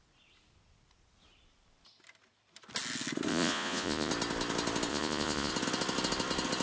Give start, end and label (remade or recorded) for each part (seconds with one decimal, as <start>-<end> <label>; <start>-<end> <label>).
0.0-3.3 recorded; 3.3-4.1 remade; 4.1-4.9 recorded; 4.9-5.5 remade; 5.5-6.6 recorded